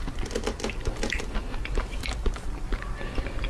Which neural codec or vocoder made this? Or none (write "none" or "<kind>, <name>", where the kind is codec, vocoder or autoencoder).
none